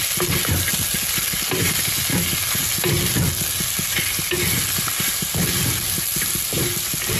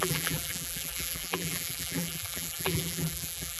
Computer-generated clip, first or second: second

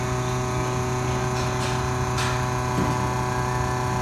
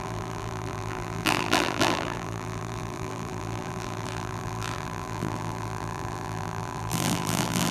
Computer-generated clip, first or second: second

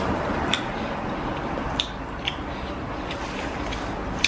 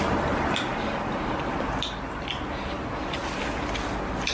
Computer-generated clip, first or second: first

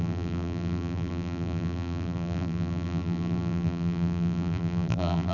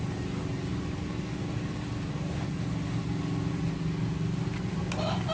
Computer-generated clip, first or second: first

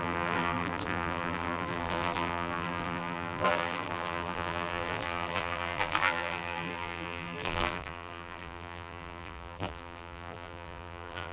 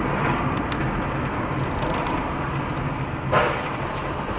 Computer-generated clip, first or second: first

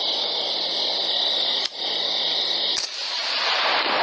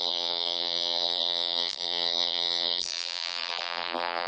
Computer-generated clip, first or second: second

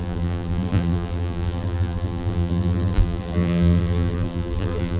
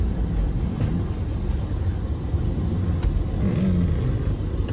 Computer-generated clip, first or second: first